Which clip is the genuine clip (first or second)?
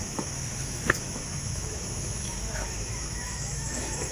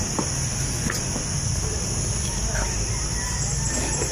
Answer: second